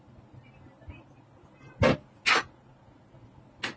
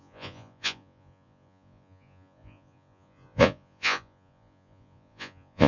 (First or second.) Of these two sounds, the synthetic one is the second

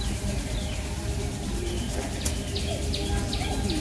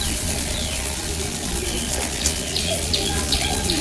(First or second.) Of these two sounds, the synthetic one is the second